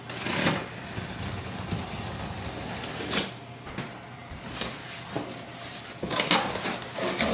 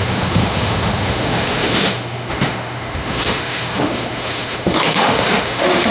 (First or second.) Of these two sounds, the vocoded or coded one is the second